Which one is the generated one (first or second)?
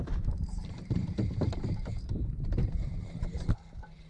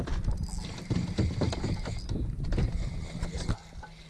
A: first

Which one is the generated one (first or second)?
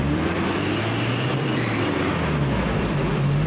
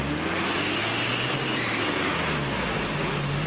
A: first